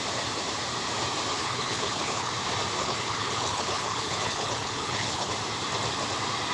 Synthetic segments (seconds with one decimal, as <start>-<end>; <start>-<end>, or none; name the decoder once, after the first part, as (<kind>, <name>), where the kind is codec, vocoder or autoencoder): 1.4-2.3 (codec, HILCodec); 2.8-5.3